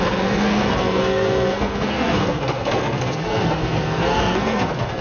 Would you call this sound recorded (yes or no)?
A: no